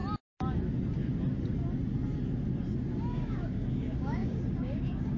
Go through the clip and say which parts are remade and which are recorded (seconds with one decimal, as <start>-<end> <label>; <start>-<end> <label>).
0.0-3.1 recorded; 3.1-5.2 remade